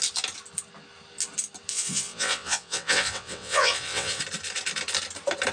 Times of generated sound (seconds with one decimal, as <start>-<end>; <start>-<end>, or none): 1.7-4.2

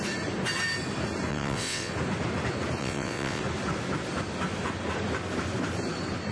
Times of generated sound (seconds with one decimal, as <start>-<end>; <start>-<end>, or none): 1.3-1.9; 2.8-3.4